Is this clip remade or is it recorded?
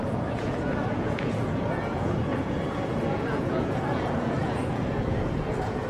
remade